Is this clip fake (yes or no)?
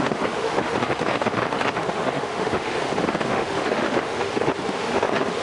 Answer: yes